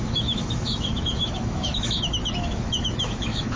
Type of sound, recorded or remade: remade